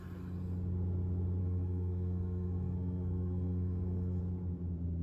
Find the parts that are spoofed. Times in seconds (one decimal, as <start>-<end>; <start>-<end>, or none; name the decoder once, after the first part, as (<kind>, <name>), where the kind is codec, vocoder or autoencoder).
1.4-4.2 (codec, SNAC)